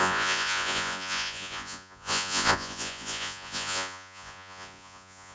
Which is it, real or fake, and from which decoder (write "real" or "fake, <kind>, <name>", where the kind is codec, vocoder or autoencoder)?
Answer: fake, vocoder, Vocos